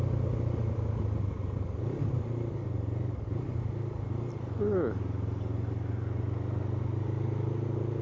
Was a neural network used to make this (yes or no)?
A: no